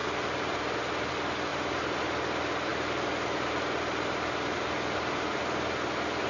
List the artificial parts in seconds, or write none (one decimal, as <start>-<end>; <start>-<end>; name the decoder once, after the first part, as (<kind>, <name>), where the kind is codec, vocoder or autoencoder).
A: 0.0-1.1 (vocoder, BigVGAN v2); 1.5-2.0; 2.7-5.4

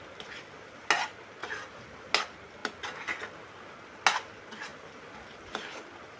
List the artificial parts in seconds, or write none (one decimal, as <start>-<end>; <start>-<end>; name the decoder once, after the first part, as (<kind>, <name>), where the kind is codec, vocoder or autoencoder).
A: none